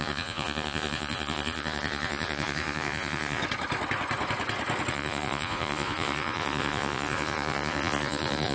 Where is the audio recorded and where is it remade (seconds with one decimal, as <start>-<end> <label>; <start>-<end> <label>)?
0.0-3.4 remade; 3.4-4.9 recorded; 4.9-8.5 remade